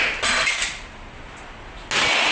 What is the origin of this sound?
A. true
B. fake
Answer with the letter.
A